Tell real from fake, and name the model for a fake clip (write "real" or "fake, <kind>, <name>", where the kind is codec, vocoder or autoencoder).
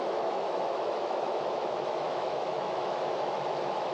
fake, autoencoder, DAC-VAE